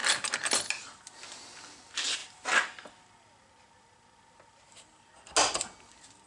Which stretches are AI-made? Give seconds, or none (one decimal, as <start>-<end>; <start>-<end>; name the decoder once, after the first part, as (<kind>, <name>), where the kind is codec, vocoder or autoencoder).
none